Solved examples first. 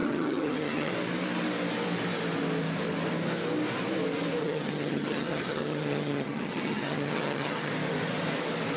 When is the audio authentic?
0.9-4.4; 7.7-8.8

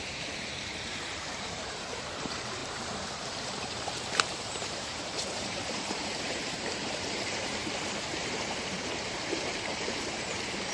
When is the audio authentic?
none

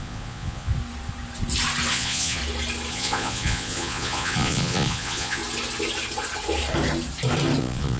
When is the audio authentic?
0.7-1.9; 2.4-2.9; 5.4-7.6